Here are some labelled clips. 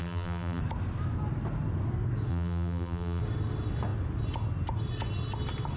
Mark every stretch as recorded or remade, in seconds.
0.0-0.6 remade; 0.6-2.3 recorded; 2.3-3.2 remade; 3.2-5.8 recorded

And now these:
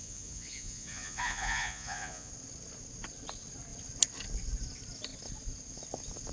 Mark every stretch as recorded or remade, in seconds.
0.0-2.3 remade; 2.3-6.3 recorded

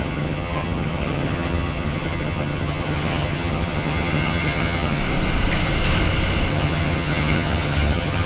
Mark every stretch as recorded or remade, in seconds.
0.0-5.0 remade; 5.0-6.5 recorded; 6.5-8.3 remade

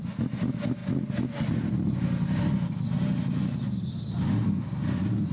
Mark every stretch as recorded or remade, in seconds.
0.0-5.3 recorded

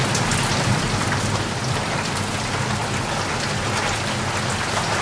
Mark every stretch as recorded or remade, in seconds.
0.0-5.0 recorded

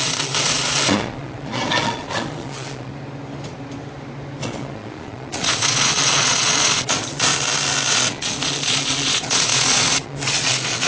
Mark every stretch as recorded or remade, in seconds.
0.0-2.9 remade; 2.9-4.4 recorded; 4.4-7.3 remade; 7.3-7.9 recorded; 7.9-10.9 remade

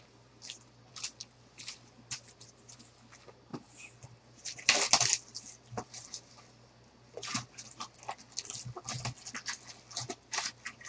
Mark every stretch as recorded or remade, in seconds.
0.0-10.9 recorded